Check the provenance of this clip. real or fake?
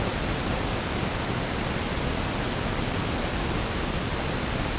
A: real